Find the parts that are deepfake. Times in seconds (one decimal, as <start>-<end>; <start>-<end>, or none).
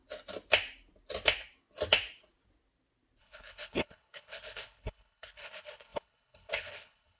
3.2-7.2